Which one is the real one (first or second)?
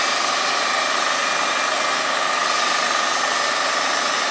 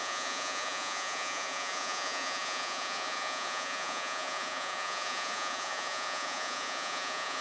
first